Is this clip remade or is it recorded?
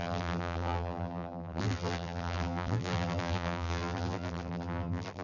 remade